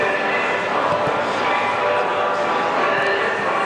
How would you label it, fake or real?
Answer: real